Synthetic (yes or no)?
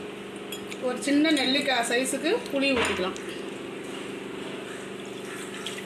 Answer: no